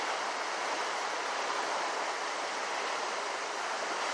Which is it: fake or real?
fake